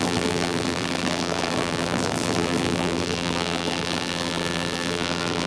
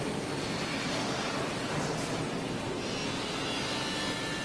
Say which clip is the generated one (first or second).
first